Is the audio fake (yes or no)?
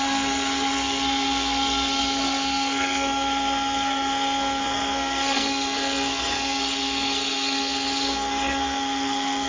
yes